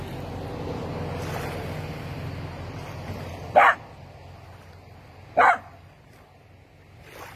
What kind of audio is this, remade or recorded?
recorded